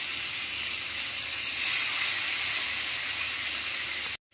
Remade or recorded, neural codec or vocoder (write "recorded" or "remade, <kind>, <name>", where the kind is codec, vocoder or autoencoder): recorded